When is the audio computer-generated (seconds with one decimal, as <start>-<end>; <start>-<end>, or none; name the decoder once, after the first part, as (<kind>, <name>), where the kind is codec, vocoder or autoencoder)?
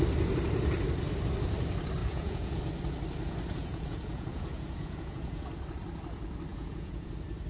2.0-2.6 (vocoder, Vocos); 3.6-5.5; 6.5-7.1